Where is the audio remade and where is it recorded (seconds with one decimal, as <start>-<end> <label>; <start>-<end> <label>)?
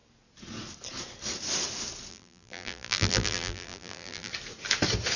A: 0.0-2.1 recorded; 2.1-4.3 remade; 4.3-5.2 recorded